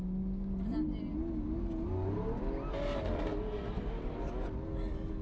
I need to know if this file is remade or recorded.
recorded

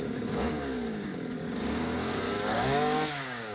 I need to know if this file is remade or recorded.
remade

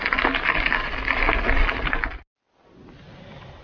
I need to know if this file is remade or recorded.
recorded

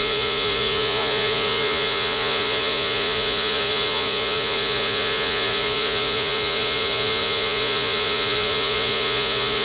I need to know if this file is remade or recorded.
remade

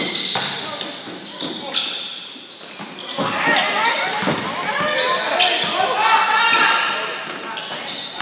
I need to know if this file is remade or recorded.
recorded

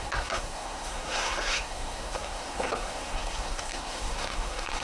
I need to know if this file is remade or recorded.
remade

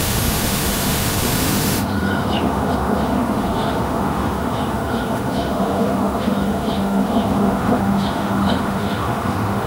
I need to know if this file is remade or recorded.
remade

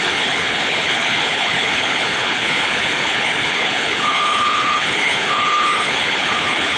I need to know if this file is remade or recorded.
remade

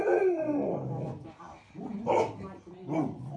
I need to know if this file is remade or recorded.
recorded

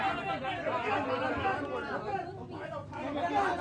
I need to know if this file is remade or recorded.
recorded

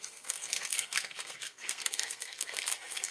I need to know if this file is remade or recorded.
remade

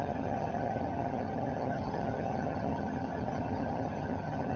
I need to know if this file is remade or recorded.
remade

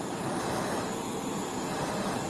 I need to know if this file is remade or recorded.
recorded